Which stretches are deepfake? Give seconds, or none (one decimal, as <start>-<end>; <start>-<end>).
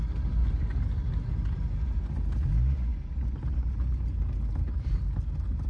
none